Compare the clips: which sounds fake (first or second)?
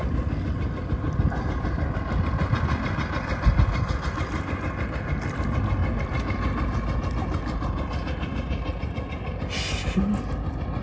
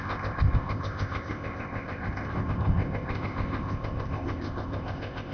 second